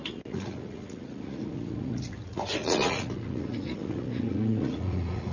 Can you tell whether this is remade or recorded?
remade